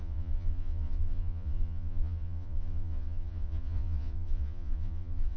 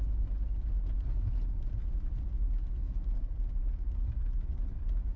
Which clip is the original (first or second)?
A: second